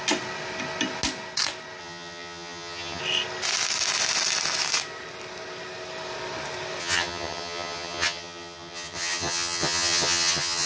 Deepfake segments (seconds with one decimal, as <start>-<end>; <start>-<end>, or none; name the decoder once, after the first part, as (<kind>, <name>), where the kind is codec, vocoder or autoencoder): 1.8-3.0 (vocoder, HiFi-GAN); 6.8-10.7